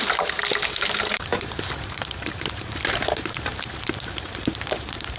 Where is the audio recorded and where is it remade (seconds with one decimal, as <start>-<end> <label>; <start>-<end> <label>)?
0.0-5.2 remade